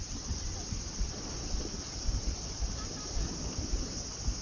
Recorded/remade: recorded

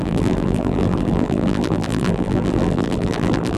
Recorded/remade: remade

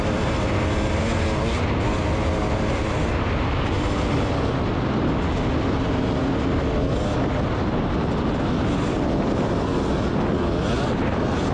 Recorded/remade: recorded